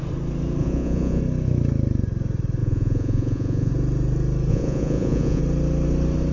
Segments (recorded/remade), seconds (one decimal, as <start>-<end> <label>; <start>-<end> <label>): 0.0-0.6 recorded; 0.6-1.2 remade; 1.2-2.6 recorded; 2.6-3.7 remade; 3.7-4.5 recorded; 4.5-5.4 remade; 5.4-6.3 recorded